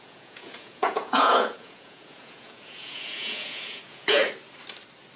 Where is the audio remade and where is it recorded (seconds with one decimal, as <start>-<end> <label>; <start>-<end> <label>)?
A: 0.0-4.2 remade; 4.2-5.2 recorded